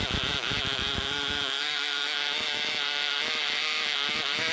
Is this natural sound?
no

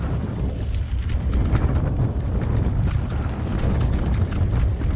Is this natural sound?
yes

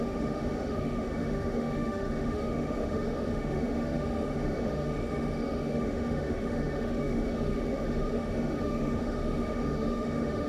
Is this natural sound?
no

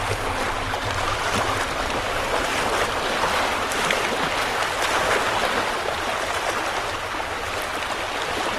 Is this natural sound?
yes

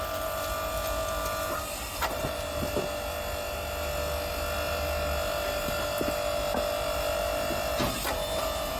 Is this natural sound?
yes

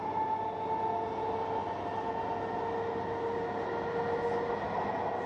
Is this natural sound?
yes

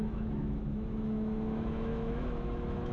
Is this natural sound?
no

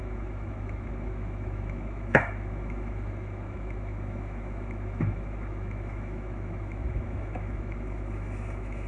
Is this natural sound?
no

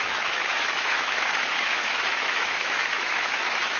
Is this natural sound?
no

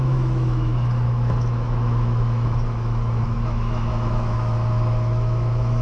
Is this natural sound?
no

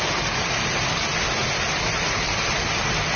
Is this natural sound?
yes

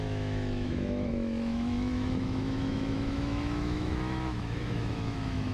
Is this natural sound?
no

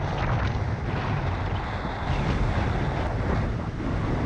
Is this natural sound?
yes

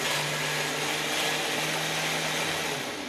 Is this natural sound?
yes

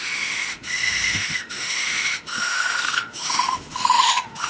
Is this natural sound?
no